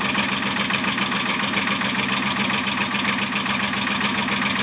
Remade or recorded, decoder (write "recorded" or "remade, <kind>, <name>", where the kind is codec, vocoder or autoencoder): recorded